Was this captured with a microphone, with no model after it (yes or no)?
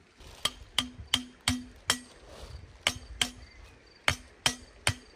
yes